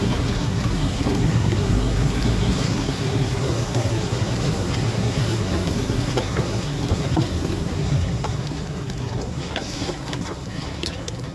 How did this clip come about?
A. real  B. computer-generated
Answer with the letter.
B